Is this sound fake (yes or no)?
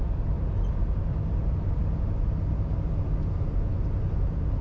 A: no